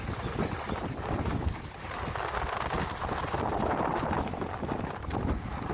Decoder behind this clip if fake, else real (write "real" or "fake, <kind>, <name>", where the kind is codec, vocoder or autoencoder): real